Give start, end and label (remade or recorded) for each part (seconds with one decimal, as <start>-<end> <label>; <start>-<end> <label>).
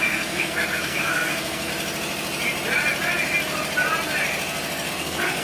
0.0-1.7 remade; 1.7-4.9 recorded; 4.9-5.4 remade